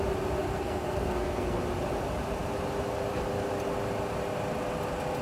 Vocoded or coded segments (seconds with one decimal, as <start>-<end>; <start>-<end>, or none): 0.4-1.6